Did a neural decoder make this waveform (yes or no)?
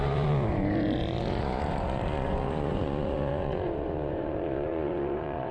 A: yes